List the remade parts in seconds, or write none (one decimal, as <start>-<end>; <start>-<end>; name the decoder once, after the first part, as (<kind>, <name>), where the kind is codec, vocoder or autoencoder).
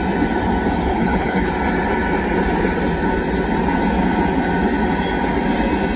0.9-1.5 (codec, HILCodec)